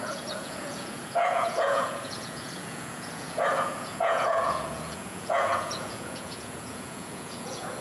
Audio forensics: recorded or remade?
remade